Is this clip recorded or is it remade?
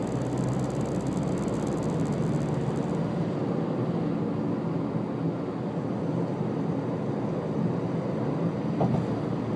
recorded